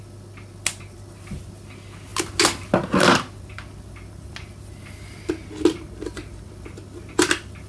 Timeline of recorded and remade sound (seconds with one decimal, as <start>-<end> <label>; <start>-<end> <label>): 0.0-7.7 recorded